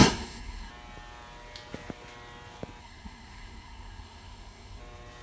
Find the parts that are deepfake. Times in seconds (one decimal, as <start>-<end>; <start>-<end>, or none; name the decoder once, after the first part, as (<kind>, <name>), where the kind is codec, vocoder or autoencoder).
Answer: 0.0-0.7 (codec, SNAC); 2.8-4.8